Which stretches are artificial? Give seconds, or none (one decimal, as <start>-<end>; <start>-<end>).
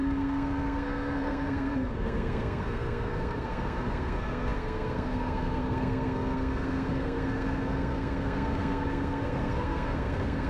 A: 0.0-10.5